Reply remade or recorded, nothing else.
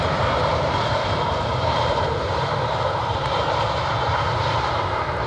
remade